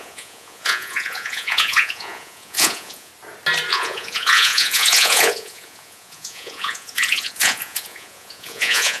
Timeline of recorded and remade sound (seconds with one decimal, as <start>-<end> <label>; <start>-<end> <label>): 0.0-3.1 remade; 3.1-3.7 recorded; 3.7-9.0 remade